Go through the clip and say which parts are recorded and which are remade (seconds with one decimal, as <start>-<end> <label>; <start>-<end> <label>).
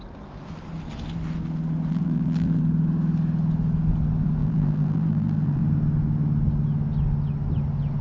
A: 0.0-1.9 recorded; 1.9-2.6 remade; 2.6-4.4 recorded; 4.4-5.6 remade; 5.6-8.0 recorded